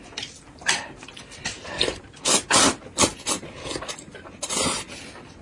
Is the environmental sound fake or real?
real